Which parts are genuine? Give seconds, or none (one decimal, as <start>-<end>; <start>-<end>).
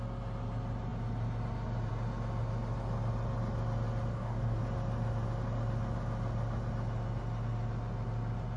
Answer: 0.0-4.1; 4.6-8.6